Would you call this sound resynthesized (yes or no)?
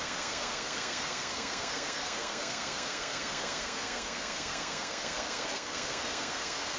yes